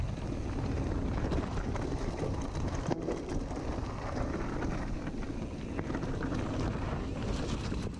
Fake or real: real